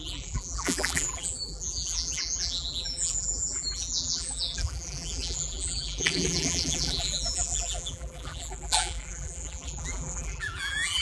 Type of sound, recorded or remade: remade